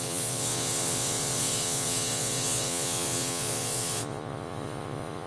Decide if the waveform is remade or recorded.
remade